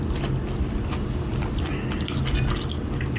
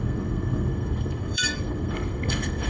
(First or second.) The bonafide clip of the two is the first